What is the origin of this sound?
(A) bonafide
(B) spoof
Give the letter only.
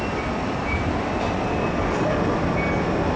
A